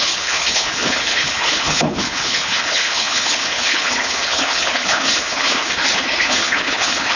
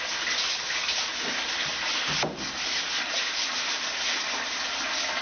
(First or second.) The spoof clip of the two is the first